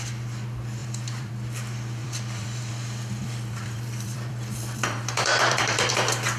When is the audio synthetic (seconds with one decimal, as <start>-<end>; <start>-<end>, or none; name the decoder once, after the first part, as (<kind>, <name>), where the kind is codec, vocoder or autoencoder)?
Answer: 0.8-1.3 (vocoder, BigVGAN v2); 2.0-2.7; 3.2-5.9